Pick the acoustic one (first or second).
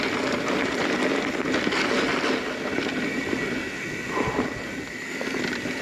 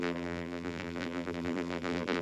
first